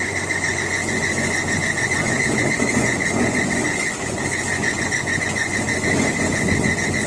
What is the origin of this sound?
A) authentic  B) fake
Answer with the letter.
B